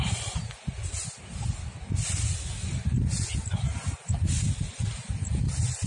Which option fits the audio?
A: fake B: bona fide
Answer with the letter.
B